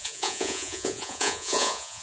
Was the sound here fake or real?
fake